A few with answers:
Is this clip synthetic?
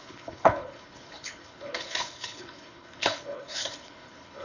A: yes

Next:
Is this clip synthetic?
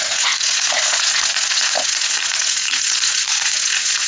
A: yes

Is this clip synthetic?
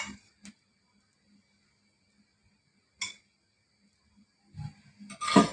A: no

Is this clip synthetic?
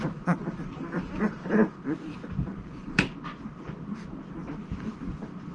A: yes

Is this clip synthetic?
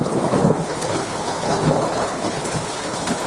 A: yes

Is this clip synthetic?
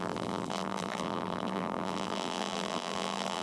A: yes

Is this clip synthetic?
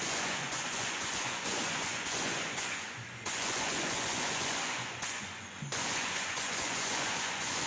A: yes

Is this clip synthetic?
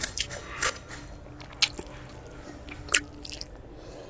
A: no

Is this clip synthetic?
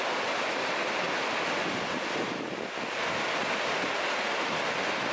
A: no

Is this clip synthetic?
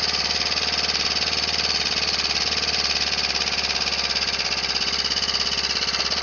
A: no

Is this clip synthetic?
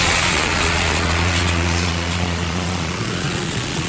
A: yes